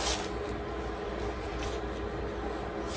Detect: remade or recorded recorded